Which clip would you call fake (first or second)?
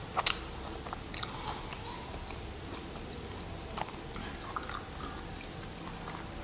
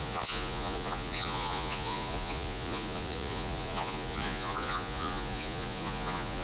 second